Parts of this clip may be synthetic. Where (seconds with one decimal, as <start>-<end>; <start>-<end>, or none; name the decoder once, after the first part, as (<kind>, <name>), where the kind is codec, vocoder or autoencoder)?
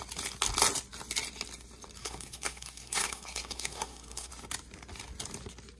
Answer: 2.0-4.3 (codec, SNAC)